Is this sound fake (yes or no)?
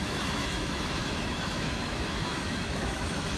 yes